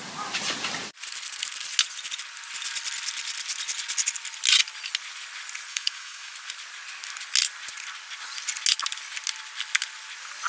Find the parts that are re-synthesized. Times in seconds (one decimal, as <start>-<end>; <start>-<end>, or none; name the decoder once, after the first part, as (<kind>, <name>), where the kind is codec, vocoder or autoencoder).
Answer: 5.7-6.3 (autoencoder, DAC-VAE)

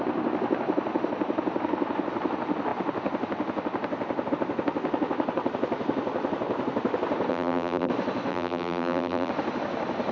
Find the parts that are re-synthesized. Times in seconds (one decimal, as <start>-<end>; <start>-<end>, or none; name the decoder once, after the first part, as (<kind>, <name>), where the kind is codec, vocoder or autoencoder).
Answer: 7.3-7.9 (vocoder, BigVGAN v2); 8.3-9.3

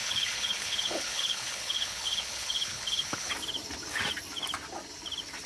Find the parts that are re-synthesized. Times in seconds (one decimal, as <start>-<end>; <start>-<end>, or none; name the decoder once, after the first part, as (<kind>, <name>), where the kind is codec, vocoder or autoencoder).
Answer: 0.0-3.3 (codec, HILCodec)

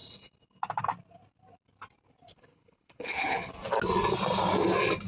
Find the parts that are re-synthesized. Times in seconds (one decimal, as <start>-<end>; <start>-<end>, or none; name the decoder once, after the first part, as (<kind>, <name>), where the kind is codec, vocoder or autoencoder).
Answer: 2.3-3.5 (codec, HILCodec)